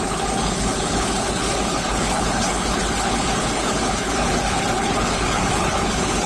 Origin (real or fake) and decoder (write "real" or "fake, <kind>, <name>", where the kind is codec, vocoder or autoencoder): fake, codec, HILCodec